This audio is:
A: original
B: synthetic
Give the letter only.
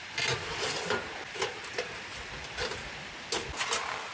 A